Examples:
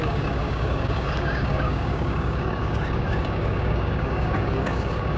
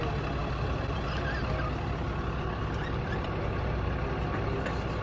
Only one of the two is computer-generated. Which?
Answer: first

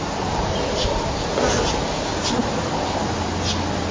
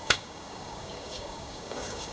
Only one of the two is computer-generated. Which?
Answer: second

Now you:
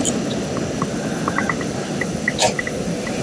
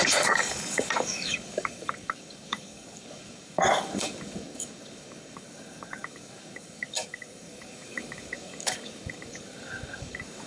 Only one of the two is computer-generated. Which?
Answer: second